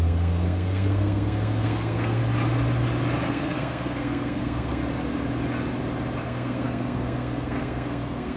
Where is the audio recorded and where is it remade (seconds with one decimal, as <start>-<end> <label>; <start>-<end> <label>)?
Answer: 0.0-2.2 remade; 2.2-3.3 recorded; 3.3-4.8 remade; 4.8-6.2 recorded; 6.2-8.4 remade